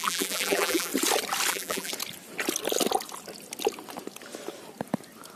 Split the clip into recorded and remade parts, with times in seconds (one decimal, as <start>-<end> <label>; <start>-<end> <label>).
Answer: 0.0-0.9 remade; 0.9-1.5 recorded; 1.5-1.9 remade; 1.9-5.4 recorded